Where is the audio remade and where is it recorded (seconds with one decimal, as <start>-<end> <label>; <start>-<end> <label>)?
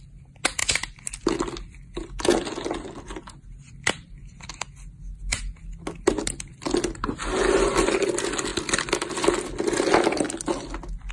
0.0-11.1 recorded